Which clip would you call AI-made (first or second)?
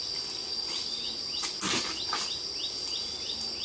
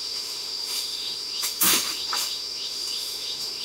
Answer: second